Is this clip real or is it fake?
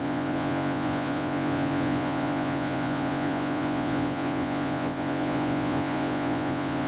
fake